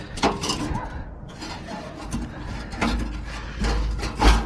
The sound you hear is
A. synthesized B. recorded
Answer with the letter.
B